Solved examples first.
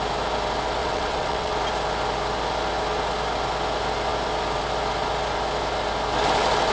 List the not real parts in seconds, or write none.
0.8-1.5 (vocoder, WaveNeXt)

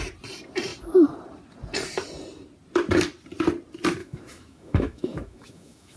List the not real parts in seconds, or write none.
4.0-6.0 (autoencoder, DAC-VAE)

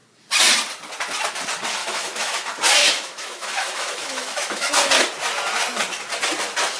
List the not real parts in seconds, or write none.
1.8-2.4 (autoencoder, DAC-VAE); 2.8-4.7

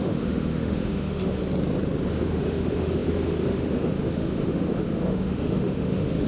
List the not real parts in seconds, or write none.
0.0-1.4 (autoencoder, DAC-VAE); 2.1-6.3

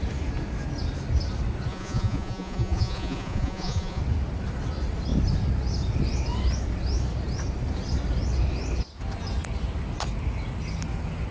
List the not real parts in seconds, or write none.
1.7-4.0 (vocoder, Vocos)

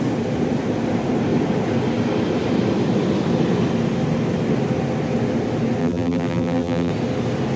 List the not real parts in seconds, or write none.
5.8-6.9 (vocoder, BigVGAN v2)

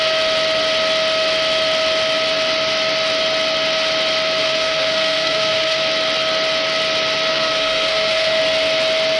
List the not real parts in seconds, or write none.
4.4-5.8 (codec, SNAC); 7.3-8.4

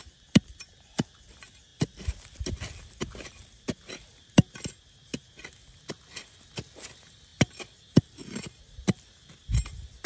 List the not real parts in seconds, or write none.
none